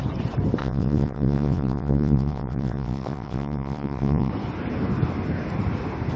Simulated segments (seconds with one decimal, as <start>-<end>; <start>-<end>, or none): 0.6-4.3